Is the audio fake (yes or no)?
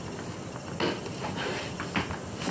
no